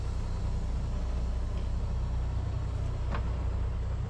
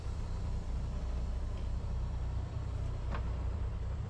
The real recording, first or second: first